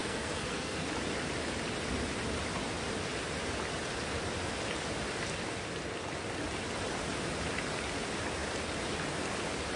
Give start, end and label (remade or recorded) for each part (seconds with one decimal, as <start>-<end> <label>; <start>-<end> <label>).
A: 0.0-0.9 remade; 0.9-9.8 recorded